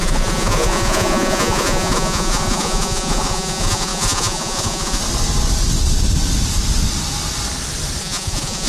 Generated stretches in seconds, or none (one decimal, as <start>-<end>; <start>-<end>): 0.0-5.0; 8.0-8.7